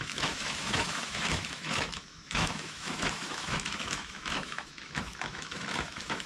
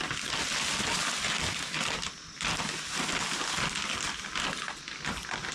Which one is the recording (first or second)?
second